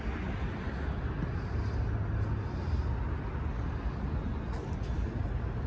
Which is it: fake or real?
real